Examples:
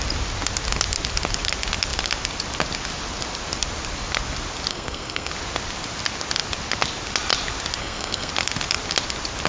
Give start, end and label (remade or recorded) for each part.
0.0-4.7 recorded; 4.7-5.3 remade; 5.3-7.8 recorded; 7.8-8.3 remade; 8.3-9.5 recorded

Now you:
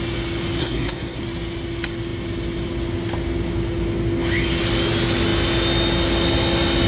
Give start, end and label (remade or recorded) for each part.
0.0-0.6 recorded; 0.6-1.2 remade; 1.2-6.9 recorded

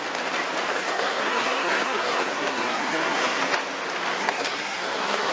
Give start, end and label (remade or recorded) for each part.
0.0-0.8 recorded; 0.8-3.4 remade; 3.4-4.2 recorded; 4.2-5.3 remade

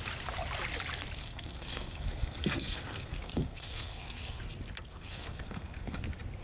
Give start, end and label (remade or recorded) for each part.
0.0-1.2 recorded; 1.2-4.4 remade; 4.4-4.9 recorded; 4.9-6.0 remade; 6.0-6.4 recorded

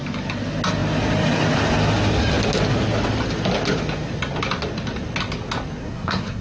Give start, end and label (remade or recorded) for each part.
0.0-5.8 recorded; 5.8-6.4 remade

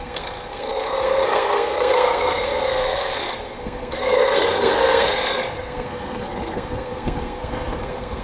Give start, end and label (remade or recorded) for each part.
0.0-8.2 remade